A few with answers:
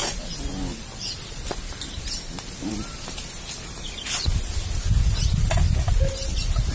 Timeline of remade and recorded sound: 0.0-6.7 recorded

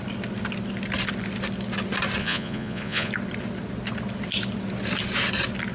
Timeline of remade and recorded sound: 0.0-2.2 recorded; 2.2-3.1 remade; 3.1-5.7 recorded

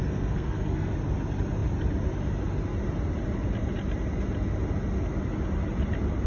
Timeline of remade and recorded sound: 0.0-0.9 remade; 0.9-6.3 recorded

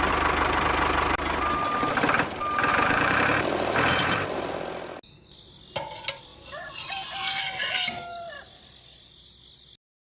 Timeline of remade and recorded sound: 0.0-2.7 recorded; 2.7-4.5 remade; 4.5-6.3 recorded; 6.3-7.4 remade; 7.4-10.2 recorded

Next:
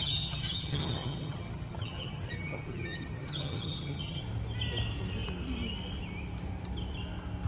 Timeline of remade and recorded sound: 0.0-4.2 remade; 4.2-7.5 recorded

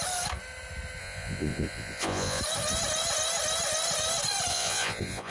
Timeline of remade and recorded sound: 0.0-1.0 recorded; 1.0-2.4 remade; 2.4-4.5 recorded; 4.5-5.3 remade

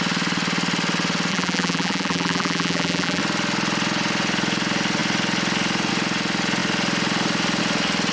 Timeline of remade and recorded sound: 0.0-1.3 recorded; 1.3-3.2 remade; 3.2-8.1 recorded

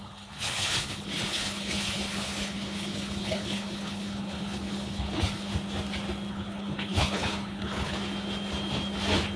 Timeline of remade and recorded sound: 0.0-5.5 remade; 5.5-6.3 recorded; 6.3-8.0 remade; 8.0-9.4 recorded